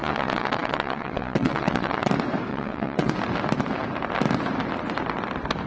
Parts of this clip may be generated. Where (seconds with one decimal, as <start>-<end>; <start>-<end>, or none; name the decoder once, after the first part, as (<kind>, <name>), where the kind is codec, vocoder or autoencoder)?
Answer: 0.0-2.1 (vocoder, WaveNeXt); 2.5-3.1